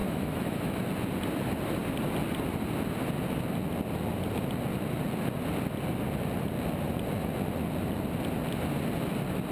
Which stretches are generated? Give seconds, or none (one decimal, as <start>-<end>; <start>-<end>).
0.0-0.8